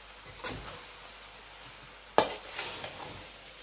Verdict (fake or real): real